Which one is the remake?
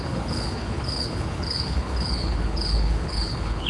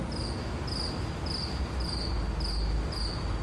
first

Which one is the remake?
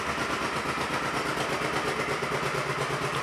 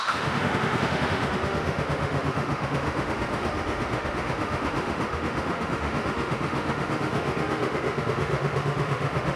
second